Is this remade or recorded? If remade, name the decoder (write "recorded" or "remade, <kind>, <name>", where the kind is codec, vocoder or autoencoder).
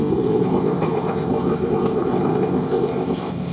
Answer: remade, codec, ZipCodec